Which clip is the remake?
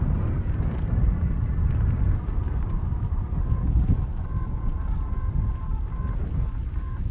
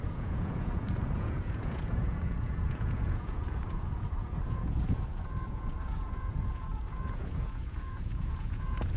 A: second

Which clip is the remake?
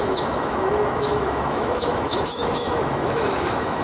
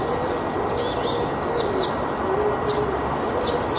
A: first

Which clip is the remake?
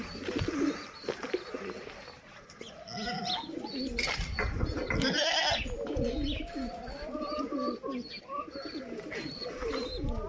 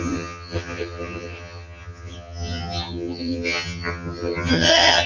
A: second